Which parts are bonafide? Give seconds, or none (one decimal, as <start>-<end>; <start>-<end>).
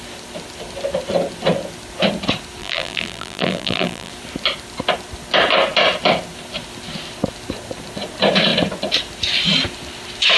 0.0-2.6; 4.1-10.4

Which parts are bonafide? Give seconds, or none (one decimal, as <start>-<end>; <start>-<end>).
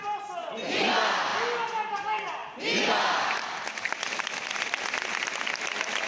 0.0-6.1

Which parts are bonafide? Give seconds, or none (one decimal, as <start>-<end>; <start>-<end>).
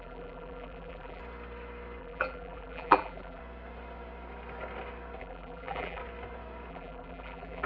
1.2-2.0; 3.4-5.2; 6.0-6.7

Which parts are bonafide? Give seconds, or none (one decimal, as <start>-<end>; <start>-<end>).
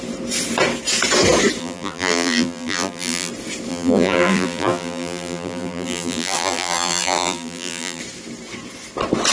0.0-1.6; 3.3-3.7; 8.0-9.3